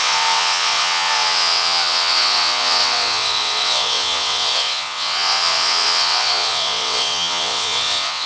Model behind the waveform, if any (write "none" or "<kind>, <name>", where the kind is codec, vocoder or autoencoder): vocoder, WaveNeXt